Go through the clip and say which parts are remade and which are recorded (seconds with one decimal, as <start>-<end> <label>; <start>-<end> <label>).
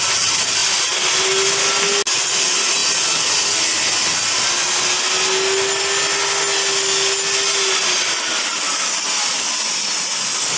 0.0-10.6 recorded